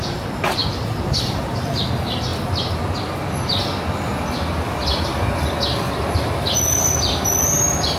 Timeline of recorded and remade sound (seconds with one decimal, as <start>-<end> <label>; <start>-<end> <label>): 0.0-0.6 recorded; 0.6-1.4 remade; 1.4-8.0 recorded